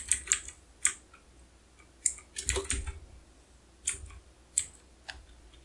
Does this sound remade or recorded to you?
recorded